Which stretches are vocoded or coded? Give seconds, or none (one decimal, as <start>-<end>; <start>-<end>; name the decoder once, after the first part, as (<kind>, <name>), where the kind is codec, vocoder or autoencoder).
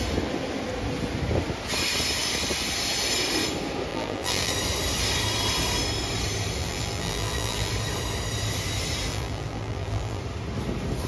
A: 3.9-4.5 (vocoder, BigVGAN v2); 6.6-7.7; 9.1-10.2